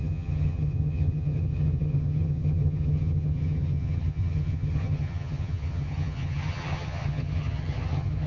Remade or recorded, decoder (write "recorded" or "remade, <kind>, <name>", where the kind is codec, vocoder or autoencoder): remade, vocoder, HiFi-GAN